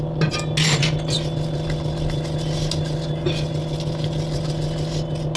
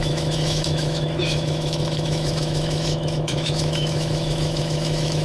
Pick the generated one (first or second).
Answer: second